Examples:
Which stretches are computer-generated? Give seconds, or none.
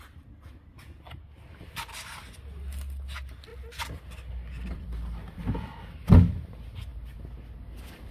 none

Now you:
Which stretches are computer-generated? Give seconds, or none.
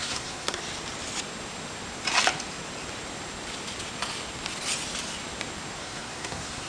0.0-0.6 (codec, SNAC); 5.8-6.7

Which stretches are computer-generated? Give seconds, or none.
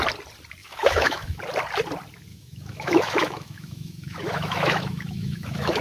0.6-1.4 (autoencoder, DAC-VAE); 2.3-5.8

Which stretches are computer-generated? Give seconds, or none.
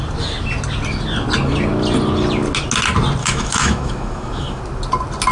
3.2-4.6 (autoencoder, DAC-VAE)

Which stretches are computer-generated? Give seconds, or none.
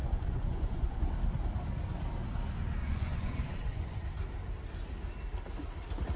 0.0-1.0 (vocoder, Vocos); 2.8-4.0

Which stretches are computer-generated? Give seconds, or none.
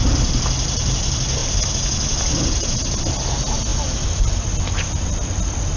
none